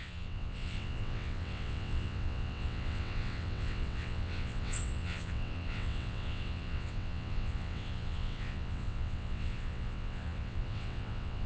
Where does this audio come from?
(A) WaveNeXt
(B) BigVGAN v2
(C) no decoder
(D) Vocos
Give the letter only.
A